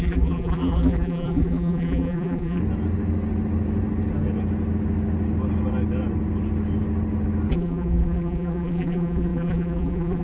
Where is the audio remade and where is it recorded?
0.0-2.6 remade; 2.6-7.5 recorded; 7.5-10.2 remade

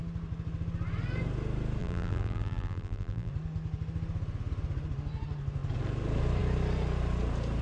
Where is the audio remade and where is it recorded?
0.0-1.8 recorded; 1.8-3.3 remade; 3.3-7.6 recorded

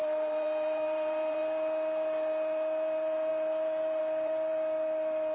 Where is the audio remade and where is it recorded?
0.0-1.4 remade; 1.4-5.3 recorded

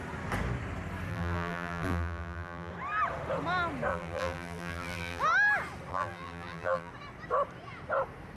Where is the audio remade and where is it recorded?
0.0-1.1 recorded; 1.1-2.7 remade; 2.7-3.9 recorded; 3.9-5.2 remade; 5.2-5.9 recorded; 5.9-6.9 remade; 6.9-8.4 recorded

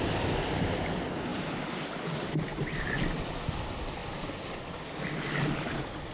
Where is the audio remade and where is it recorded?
0.0-1.3 recorded; 1.3-1.8 remade; 1.8-2.5 recorded; 2.5-3.4 remade; 3.4-4.0 recorded; 4.0-5.0 remade; 5.0-6.1 recorded